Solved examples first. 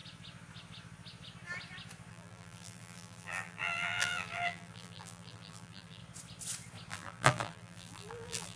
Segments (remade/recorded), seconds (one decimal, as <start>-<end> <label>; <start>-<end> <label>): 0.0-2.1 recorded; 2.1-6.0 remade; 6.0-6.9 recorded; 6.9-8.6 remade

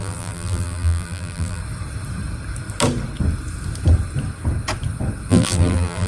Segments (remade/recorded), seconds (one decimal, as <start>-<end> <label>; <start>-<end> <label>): 0.0-1.6 remade; 1.6-5.3 recorded; 5.3-6.1 remade

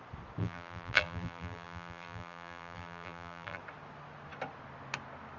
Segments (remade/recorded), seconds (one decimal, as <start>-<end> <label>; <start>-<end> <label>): 0.0-0.4 recorded; 0.4-3.6 remade; 3.6-5.4 recorded

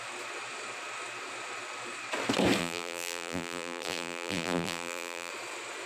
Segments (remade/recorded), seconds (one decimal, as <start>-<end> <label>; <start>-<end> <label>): 0.0-2.6 recorded; 2.6-5.3 remade; 5.3-5.9 recorded